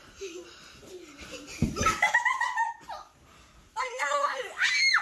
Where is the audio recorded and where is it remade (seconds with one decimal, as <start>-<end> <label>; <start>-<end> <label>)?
0.0-3.8 recorded; 3.8-4.4 remade; 4.4-5.0 recorded